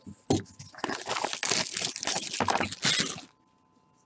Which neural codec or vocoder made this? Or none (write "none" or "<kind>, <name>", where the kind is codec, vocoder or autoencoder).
none